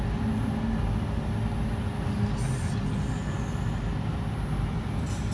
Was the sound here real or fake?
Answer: real